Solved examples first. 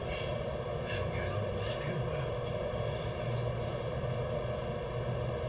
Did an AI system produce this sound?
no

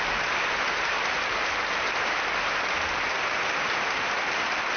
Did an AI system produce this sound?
no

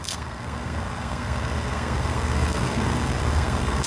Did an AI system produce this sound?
yes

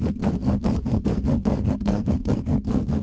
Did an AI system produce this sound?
yes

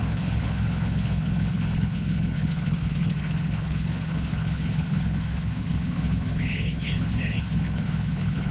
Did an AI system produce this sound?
yes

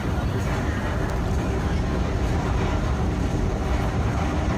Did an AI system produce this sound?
no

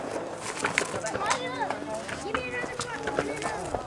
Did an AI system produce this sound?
no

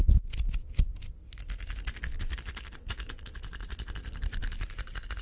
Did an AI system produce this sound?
no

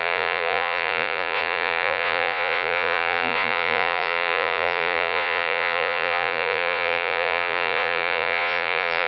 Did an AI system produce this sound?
yes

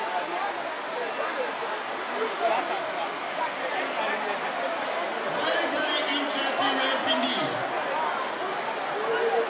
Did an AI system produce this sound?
no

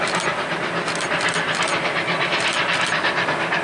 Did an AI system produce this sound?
no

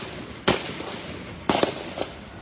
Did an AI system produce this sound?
no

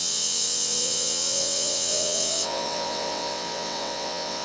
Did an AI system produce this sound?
yes